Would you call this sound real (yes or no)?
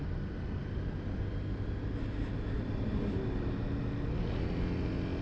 yes